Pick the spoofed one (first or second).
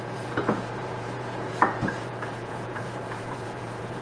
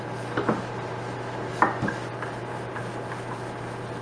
first